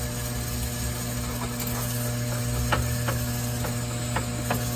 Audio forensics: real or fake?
real